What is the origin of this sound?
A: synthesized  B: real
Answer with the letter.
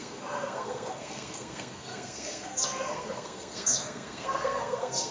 A